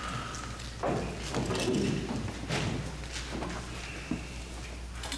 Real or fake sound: real